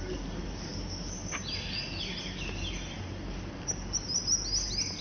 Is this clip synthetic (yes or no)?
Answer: no